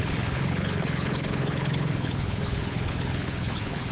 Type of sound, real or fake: fake